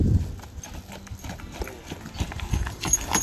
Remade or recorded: recorded